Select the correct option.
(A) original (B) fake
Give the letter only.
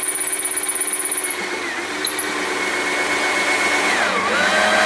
A